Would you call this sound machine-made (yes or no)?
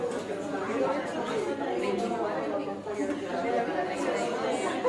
no